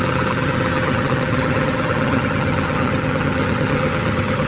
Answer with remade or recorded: remade